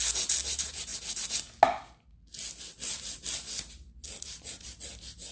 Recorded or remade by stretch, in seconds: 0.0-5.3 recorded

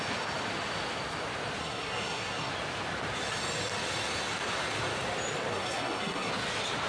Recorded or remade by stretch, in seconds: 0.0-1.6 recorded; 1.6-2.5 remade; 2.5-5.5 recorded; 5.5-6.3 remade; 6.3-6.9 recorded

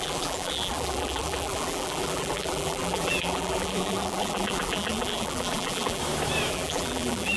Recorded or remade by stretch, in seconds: 0.0-6.0 remade; 6.0-6.5 recorded; 6.5-7.4 remade

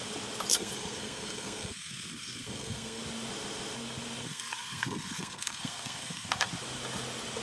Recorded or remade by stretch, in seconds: 0.0-0.5 recorded; 0.5-3.0 remade; 3.0-4.2 recorded; 4.2-6.5 remade; 6.5-7.4 recorded

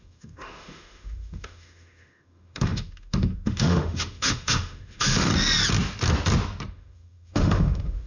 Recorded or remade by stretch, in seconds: 0.0-5.3 remade; 5.3-6.7 recorded; 6.7-8.1 remade

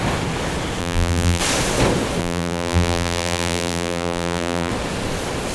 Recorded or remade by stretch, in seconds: 0.0-0.8 recorded; 0.8-1.4 remade; 1.4-2.2 recorded; 2.2-4.7 remade; 4.7-5.5 recorded

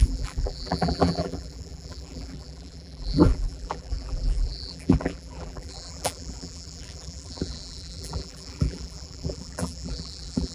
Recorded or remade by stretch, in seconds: 0.0-10.5 remade